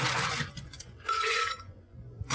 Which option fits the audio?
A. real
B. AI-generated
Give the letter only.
B